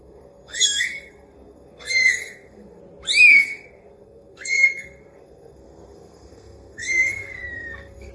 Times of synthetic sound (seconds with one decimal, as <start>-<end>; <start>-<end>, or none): 0.0-2.8; 3.3-8.1